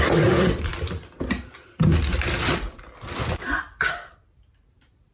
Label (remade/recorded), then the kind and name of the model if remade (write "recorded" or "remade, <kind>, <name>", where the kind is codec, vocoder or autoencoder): remade, vocoder, BigVGAN v2